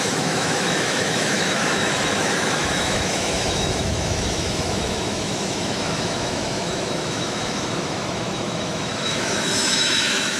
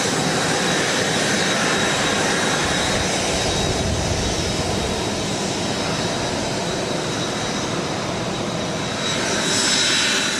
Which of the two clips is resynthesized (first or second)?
first